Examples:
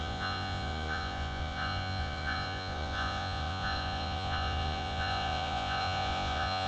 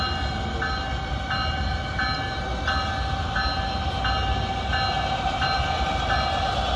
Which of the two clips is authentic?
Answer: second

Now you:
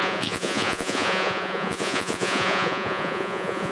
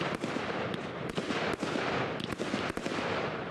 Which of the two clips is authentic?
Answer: second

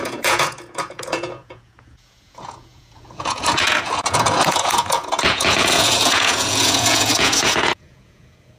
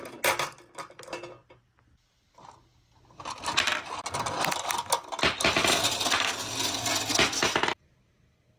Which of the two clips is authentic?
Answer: second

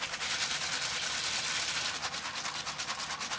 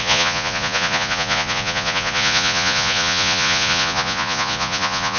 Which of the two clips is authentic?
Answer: first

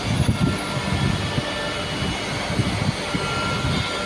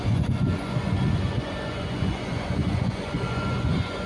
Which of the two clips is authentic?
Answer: first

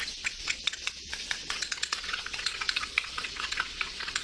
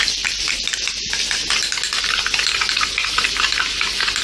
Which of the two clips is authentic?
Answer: second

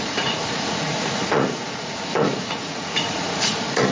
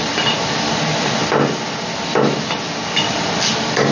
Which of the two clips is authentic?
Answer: second